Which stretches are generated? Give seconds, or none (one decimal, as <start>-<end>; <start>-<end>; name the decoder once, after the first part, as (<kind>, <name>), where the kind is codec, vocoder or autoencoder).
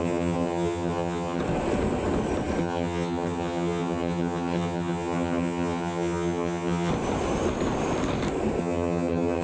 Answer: 0.0-1.4 (vocoder, HiFi-GAN); 2.6-6.9; 8.6-9.4